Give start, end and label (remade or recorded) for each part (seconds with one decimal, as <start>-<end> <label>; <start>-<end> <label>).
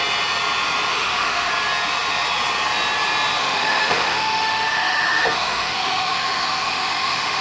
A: 0.0-0.9 recorded; 0.9-1.5 remade; 1.5-3.4 recorded; 3.4-7.4 remade